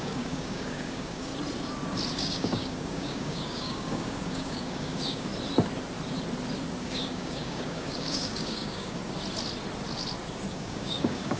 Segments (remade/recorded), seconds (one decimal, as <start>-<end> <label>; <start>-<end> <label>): 0.0-1.3 remade; 1.3-2.1 recorded; 2.1-5.3 remade; 5.3-6.8 recorded; 6.8-9.0 remade; 9.0-10.5 recorded; 10.5-11.4 remade